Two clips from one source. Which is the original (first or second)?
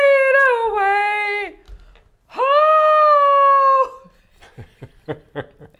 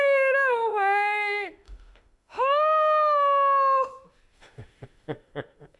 first